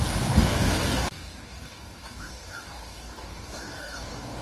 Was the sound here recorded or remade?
remade